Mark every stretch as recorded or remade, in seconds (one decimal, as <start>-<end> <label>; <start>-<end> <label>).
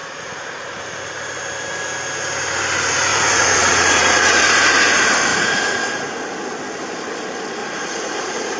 0.0-0.8 remade; 0.8-3.1 recorded; 3.1-4.4 remade; 4.4-5.3 recorded; 5.3-6.0 remade; 6.0-7.6 recorded; 7.6-8.6 remade